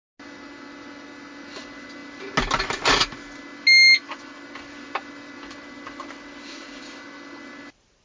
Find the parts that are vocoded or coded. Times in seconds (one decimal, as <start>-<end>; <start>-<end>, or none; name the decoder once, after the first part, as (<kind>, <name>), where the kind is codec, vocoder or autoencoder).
none